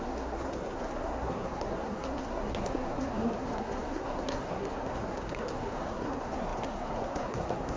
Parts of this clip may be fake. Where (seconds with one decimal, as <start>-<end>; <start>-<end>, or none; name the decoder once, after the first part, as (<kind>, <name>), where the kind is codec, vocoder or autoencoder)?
0.0-7.8 (codec, SNAC)